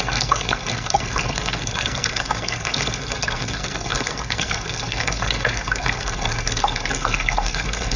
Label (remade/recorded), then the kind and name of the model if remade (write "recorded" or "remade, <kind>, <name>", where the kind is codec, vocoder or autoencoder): remade, codec, SNAC